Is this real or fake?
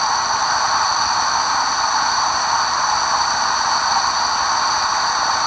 real